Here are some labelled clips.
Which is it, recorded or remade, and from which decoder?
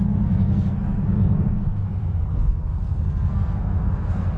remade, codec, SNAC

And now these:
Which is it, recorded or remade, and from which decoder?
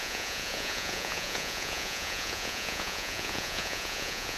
remade, vocoder, Vocos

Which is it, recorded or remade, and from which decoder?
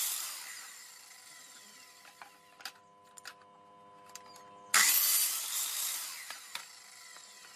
recorded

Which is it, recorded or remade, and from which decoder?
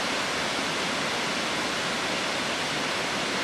recorded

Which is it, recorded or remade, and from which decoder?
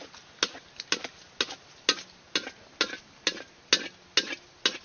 recorded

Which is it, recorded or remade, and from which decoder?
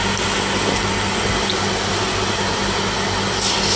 recorded